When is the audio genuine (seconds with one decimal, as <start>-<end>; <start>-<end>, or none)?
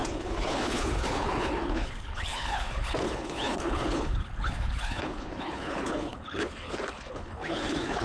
none